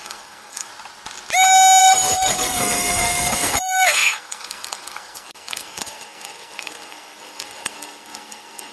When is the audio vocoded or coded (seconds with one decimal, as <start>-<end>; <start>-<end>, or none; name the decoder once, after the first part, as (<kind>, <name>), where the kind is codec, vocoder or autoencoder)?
0.0-0.7 (codec, SNAC); 1.8-8.7